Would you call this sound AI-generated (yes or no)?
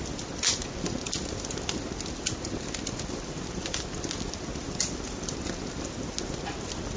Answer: no